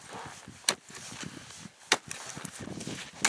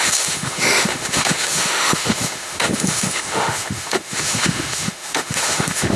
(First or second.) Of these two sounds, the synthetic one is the second